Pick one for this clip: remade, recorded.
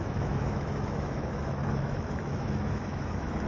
remade